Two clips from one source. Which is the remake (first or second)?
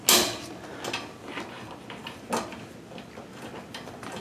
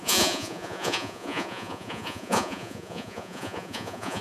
second